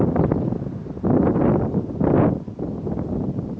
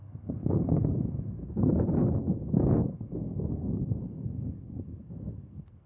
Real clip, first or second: first